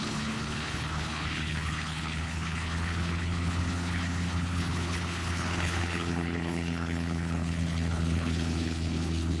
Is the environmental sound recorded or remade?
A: remade